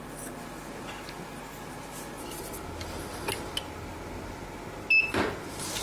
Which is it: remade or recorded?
recorded